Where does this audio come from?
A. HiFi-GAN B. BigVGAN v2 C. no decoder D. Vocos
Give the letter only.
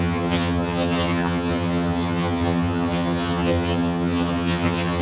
A